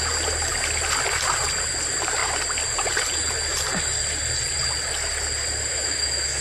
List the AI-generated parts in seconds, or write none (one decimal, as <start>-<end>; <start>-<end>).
5.7-6.4

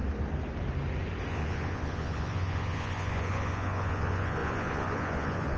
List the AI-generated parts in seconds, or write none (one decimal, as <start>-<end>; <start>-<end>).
1.3-5.6

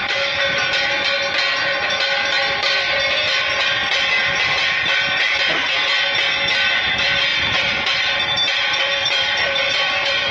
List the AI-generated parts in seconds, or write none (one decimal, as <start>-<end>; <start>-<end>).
7.3-10.3

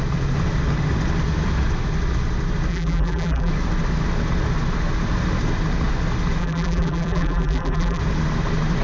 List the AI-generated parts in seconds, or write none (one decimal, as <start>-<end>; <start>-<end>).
2.7-3.5; 6.4-8.0

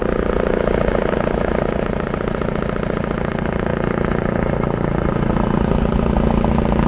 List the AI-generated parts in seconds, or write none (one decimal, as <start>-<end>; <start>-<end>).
none